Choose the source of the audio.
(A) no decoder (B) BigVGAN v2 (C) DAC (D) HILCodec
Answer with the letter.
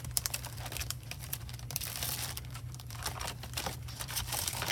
B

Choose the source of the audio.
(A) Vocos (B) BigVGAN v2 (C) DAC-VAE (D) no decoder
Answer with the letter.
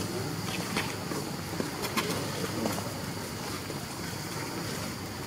D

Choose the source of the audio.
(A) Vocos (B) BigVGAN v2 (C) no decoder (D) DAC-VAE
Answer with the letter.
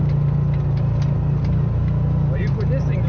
C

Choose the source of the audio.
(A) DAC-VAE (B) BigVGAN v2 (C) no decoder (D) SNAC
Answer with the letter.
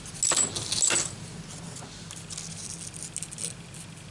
C